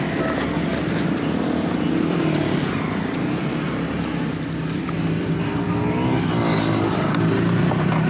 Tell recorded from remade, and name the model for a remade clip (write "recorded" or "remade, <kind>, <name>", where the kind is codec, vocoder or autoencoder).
recorded